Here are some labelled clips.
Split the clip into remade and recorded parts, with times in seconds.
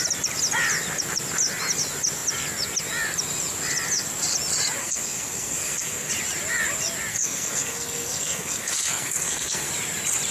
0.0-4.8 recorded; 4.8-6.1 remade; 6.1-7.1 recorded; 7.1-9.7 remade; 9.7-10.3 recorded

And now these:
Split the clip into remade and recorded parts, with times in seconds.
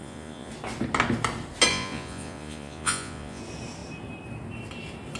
0.0-0.5 remade; 0.5-1.7 recorded; 1.7-3.4 remade; 3.4-5.2 recorded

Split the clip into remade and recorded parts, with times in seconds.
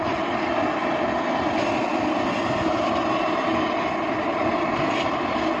0.0-5.6 recorded